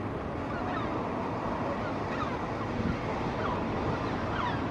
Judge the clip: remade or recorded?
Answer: recorded